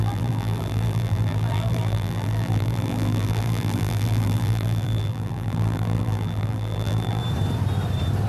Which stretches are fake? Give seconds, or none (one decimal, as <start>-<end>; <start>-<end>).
0.0-7.2